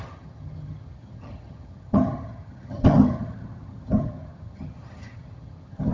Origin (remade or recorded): remade